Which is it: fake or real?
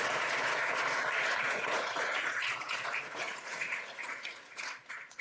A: fake